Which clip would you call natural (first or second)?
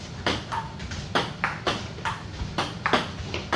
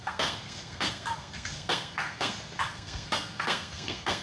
first